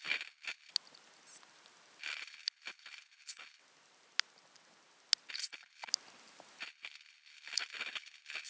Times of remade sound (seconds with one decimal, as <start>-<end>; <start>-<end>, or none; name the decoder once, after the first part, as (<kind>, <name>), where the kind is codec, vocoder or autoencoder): 0.0-0.7 (codec, HILCodec); 2.0-3.6; 5.3-5.9; 6.6-8.5